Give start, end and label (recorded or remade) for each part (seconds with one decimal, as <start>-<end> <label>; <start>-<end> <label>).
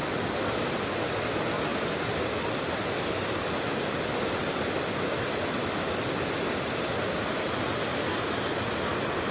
0.0-9.3 recorded